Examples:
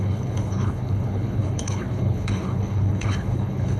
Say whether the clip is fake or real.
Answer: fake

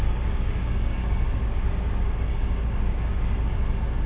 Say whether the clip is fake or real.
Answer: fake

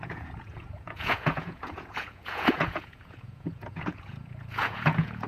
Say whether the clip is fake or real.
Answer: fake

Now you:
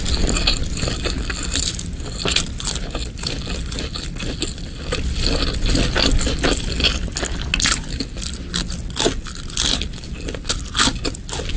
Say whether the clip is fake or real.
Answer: real